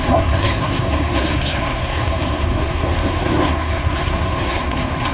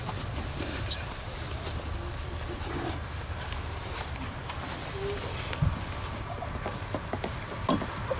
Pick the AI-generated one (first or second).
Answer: first